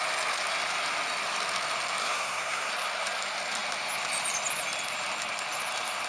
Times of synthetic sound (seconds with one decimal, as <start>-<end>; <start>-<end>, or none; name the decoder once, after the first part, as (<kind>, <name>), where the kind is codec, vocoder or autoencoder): 2.0-2.7 (codec, SNAC)